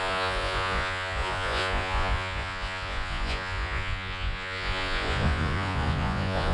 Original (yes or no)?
no